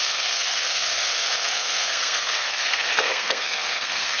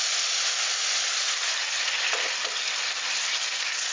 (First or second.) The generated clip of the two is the first